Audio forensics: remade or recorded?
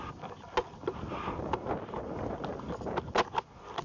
recorded